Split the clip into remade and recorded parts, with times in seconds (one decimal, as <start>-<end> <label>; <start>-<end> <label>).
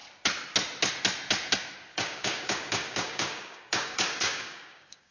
0.0-1.9 recorded; 1.9-5.1 remade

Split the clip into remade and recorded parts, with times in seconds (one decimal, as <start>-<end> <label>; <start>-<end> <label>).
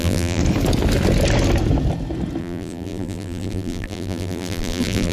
0.0-0.4 remade; 0.4-2.4 recorded; 2.4-5.1 remade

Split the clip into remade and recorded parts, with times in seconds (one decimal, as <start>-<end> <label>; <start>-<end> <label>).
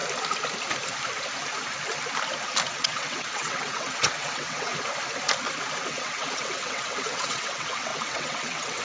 0.0-2.7 recorded; 2.7-4.7 remade; 4.7-5.9 recorded; 5.9-8.8 remade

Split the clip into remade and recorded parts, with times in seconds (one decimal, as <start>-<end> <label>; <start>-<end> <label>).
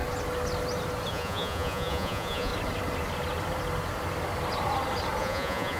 0.0-1.1 recorded; 1.1-2.5 remade; 2.5-5.2 recorded; 5.2-5.8 remade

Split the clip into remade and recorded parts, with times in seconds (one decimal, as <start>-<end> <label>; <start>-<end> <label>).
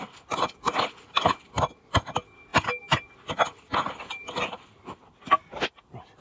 0.0-6.2 recorded